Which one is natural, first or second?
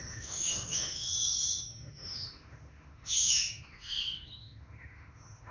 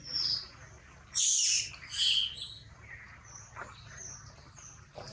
second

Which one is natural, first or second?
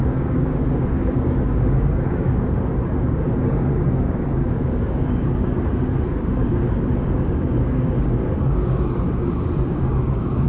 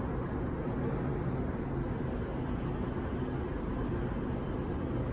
second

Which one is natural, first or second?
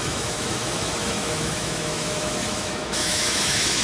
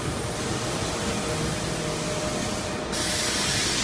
second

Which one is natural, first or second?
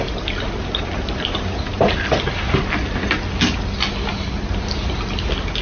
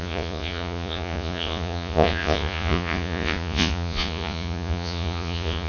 first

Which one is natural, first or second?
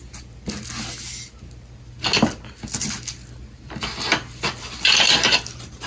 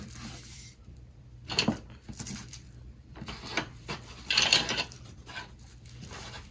first